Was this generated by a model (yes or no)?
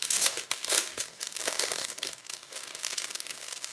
yes